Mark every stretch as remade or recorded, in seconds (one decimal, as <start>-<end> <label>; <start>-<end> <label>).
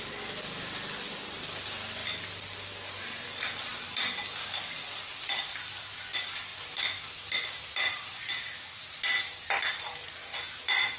0.0-11.0 recorded